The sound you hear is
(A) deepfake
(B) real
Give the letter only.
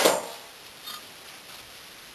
A